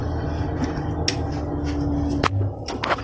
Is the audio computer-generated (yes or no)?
no